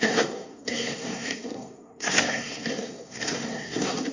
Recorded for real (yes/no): no